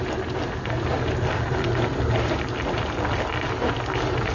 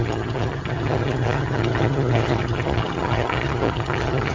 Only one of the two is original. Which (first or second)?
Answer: first